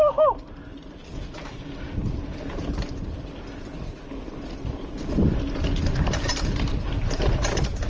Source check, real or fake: real